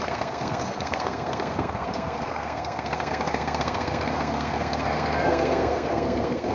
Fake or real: fake